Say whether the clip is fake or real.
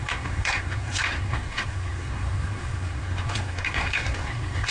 fake